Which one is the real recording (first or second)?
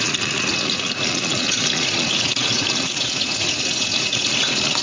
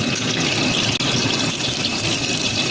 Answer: second